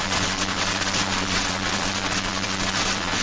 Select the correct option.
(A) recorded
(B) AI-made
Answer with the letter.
B